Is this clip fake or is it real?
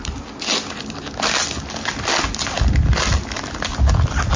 real